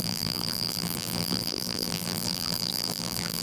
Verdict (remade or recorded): remade